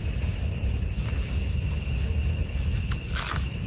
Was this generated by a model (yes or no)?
no